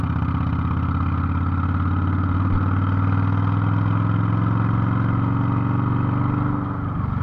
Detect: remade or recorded recorded